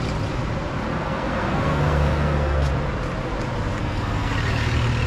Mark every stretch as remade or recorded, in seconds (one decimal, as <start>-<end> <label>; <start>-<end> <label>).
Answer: 0.0-0.9 recorded; 0.9-2.7 remade; 2.7-3.8 recorded; 3.8-4.3 remade; 4.3-5.1 recorded